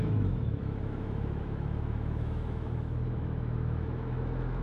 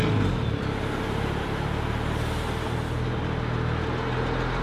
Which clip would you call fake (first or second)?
first